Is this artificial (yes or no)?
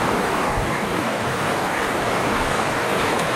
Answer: yes